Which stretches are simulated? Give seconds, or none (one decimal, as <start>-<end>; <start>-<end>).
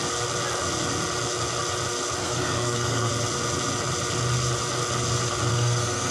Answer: 2.2-3.1; 5.5-6.1